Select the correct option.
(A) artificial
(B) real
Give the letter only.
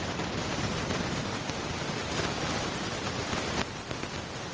B